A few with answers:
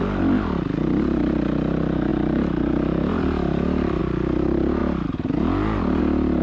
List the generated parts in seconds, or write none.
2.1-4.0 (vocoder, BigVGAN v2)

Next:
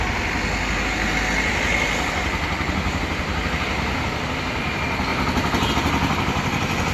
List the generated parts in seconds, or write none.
none

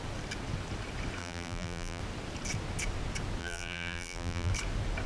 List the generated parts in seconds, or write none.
1.2-2.0 (vocoder, BigVGAN v2); 3.4-4.5

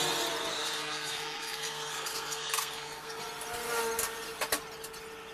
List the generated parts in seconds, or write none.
0.5-3.2 (codec, SNAC)

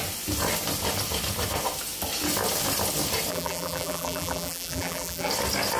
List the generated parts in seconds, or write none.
3.3-5.3 (vocoder, BigVGAN v2)

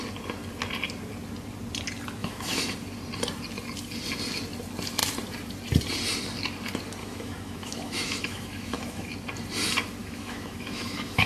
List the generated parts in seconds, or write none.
2.2-2.7 (autoencoder, DAC-VAE); 7.0-9.1; 10.0-11.3

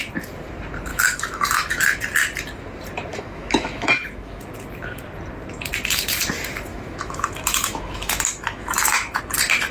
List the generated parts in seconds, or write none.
0.9-1.8 (autoencoder, DAC-VAE); 3.1-4.4; 6.7-9.2